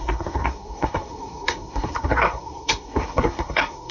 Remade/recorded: remade